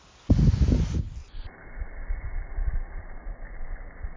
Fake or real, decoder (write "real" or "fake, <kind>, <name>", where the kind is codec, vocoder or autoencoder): real